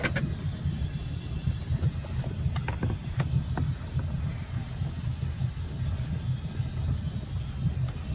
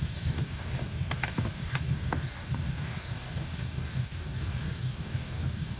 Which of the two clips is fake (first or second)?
second